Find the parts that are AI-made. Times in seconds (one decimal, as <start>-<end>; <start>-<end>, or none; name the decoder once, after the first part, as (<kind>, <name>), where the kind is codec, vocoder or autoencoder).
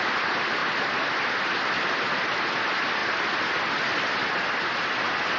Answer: none